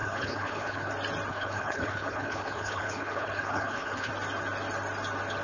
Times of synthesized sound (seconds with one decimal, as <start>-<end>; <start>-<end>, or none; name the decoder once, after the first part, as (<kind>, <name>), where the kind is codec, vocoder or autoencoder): 0.0-0.9 (codec, HILCodec); 1.3-4.1